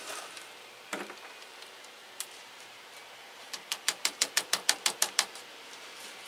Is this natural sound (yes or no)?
no